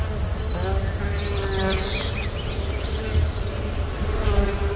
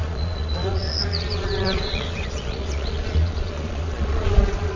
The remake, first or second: second